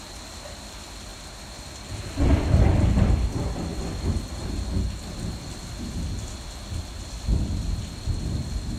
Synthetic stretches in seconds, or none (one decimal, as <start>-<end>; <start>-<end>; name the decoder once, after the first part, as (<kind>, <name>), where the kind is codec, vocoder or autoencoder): 1.1-1.6 (vocoder, BigVGAN v2); 3.7-4.5